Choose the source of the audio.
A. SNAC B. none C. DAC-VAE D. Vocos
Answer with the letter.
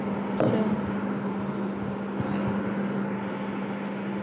B